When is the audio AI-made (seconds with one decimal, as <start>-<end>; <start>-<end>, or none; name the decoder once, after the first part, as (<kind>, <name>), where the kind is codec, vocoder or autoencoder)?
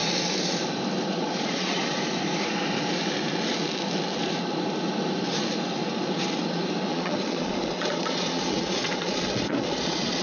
1.2-1.8 (vocoder, Vocos); 6.9-10.2